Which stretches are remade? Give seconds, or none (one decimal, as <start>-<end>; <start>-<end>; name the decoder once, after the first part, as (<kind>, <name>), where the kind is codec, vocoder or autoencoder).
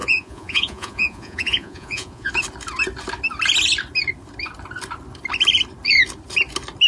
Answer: 0.0-2.3 (vocoder, Vocos)